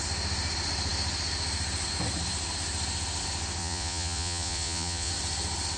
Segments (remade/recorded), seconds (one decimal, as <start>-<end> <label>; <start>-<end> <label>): 0.0-3.6 recorded; 3.6-5.1 remade; 5.1-5.8 recorded